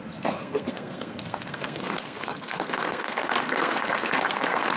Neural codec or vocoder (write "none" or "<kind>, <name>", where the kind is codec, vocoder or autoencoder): codec, SNAC